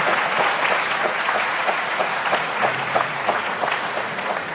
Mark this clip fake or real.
fake